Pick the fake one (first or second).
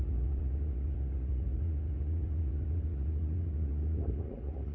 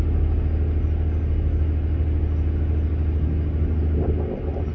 first